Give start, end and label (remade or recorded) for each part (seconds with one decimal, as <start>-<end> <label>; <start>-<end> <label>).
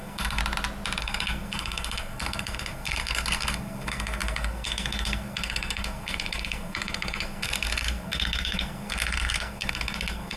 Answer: 0.0-0.4 remade; 0.4-1.0 recorded; 1.0-10.4 remade